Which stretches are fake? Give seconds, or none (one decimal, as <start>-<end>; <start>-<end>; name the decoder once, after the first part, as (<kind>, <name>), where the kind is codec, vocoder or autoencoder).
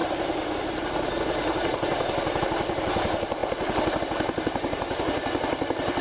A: none